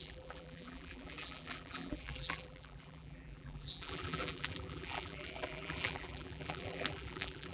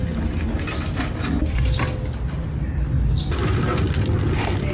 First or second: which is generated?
first